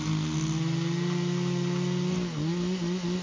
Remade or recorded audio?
recorded